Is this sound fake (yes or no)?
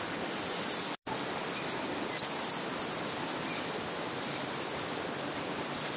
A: no